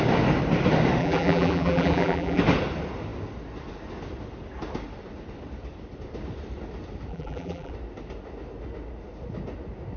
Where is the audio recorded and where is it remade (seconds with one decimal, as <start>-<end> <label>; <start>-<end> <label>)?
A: 0.0-1.0 recorded; 1.0-2.4 remade; 2.4-7.1 recorded; 7.1-7.7 remade; 7.7-10.0 recorded